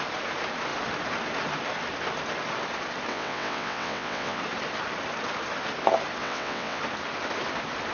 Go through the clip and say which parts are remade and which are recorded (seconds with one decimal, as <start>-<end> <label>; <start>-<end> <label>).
0.0-3.1 recorded; 3.1-4.4 remade; 4.4-6.2 recorded; 6.2-6.8 remade; 6.8-7.9 recorded

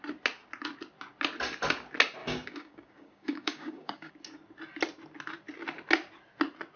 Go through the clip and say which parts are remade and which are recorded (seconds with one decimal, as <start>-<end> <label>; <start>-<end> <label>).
0.0-2.2 recorded; 2.2-4.1 remade; 4.1-6.8 recorded

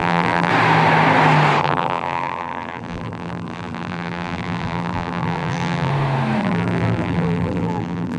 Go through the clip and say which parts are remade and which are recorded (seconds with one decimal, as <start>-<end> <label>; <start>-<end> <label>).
0.0-0.5 remade; 0.5-1.6 recorded; 1.6-5.9 remade; 5.9-6.4 recorded; 6.4-8.2 remade

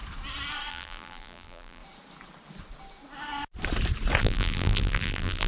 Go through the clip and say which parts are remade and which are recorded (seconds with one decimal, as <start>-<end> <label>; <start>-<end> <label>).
0.0-0.7 recorded; 0.7-1.8 remade; 1.8-4.2 recorded; 4.2-5.5 remade